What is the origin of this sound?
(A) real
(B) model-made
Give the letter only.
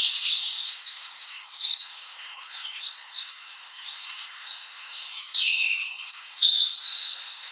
B